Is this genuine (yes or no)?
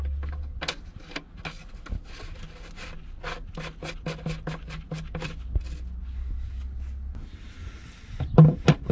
yes